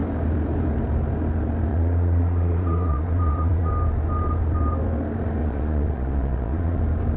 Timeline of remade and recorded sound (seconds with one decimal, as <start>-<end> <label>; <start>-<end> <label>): 0.0-1.7 recorded; 1.7-3.7 remade; 3.7-5.4 recorded; 5.4-6.8 remade; 6.8-7.2 recorded